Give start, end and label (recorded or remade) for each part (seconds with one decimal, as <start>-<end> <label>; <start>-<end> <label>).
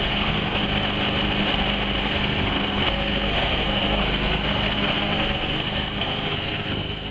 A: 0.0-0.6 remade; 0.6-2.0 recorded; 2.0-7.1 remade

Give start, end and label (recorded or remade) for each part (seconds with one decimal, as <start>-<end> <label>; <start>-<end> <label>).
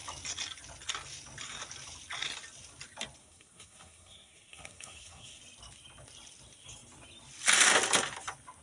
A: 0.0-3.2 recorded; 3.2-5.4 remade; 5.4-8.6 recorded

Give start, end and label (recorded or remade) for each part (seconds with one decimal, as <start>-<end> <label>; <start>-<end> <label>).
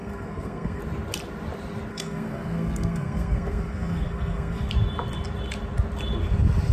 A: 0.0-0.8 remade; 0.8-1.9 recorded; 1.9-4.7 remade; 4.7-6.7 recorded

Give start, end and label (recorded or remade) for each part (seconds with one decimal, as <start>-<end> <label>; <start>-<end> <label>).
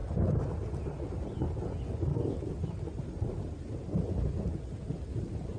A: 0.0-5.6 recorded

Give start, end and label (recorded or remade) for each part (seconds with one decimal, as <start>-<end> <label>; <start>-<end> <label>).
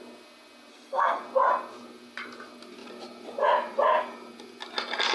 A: 0.0-0.7 recorded; 0.7-1.2 remade; 1.2-5.1 recorded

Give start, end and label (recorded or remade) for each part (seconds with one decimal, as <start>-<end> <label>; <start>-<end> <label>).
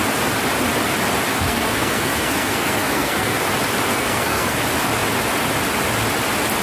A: 0.0-1.3 recorded; 1.3-3.4 remade; 3.4-3.9 recorded; 3.9-4.6 remade; 4.6-6.6 recorded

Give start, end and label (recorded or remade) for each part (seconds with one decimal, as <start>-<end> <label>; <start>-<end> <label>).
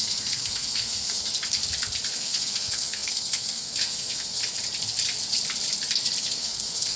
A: 0.0-1.3 remade; 1.3-2.1 recorded; 2.1-4.4 remade; 4.4-6.2 recorded; 6.2-7.0 remade